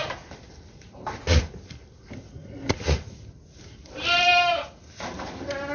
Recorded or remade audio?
recorded